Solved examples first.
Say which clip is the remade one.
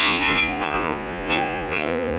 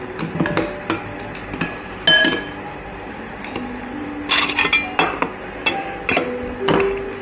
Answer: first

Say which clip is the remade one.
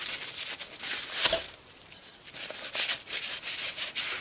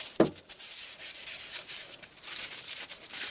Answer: second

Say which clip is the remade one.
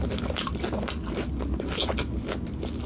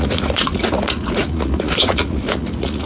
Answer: second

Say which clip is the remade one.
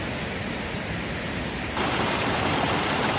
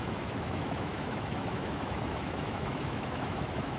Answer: second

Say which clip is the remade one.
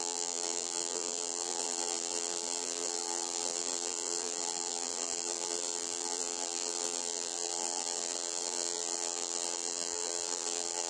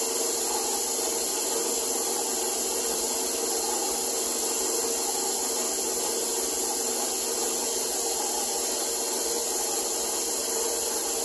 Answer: first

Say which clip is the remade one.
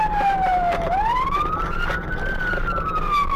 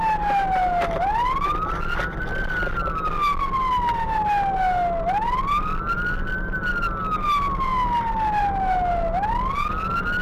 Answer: first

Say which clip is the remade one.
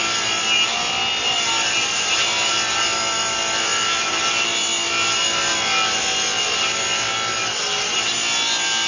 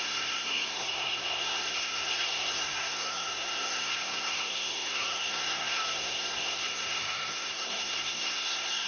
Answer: second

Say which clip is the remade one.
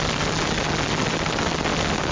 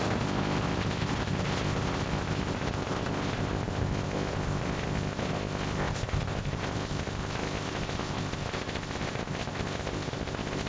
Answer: second